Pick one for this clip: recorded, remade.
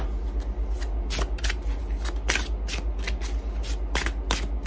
recorded